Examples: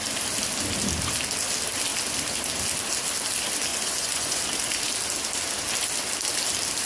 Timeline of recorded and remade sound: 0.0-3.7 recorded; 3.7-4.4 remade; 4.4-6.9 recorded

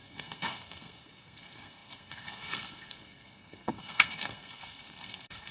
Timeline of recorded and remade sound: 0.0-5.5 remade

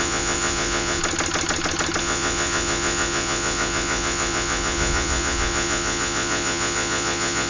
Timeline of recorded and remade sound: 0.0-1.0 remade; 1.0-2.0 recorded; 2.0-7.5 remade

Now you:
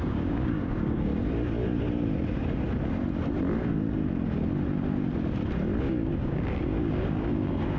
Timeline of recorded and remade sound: 0.0-1.1 remade; 1.1-5.8 recorded; 5.8-7.8 remade